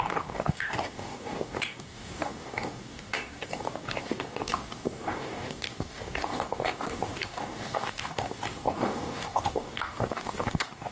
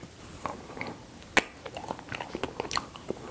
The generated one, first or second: first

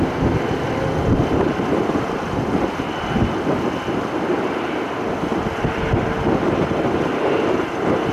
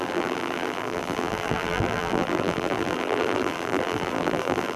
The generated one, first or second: second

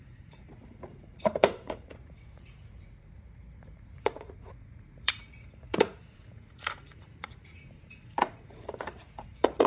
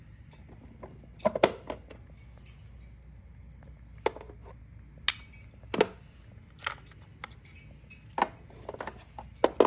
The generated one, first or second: first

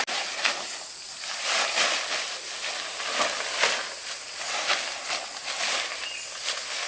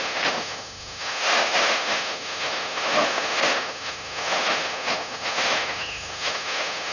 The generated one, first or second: second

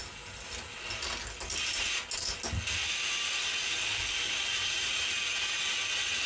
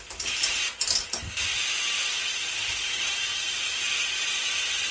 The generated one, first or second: second